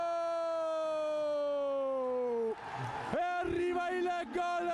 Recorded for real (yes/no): yes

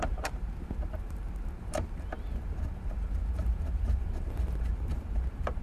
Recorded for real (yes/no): no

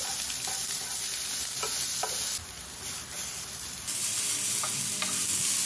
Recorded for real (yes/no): yes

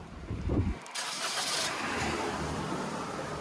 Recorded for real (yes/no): no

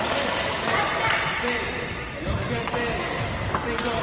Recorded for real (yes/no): no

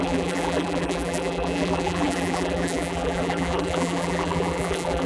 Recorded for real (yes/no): no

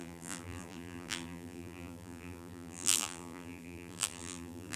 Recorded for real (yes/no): no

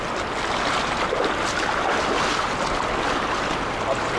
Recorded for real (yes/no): yes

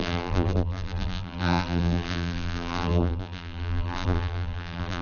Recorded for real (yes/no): no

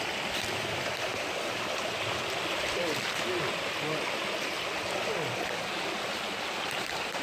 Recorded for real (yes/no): yes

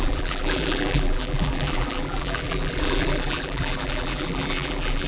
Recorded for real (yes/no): no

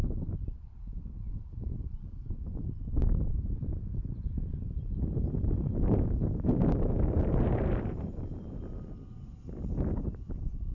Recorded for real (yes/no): no